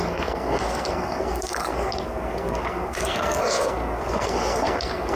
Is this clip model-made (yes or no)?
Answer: yes